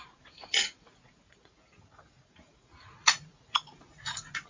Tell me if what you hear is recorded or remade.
remade